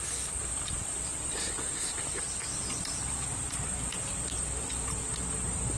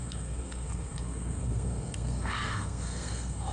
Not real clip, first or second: second